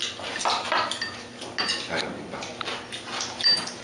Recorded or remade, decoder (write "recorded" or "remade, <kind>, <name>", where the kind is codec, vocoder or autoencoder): recorded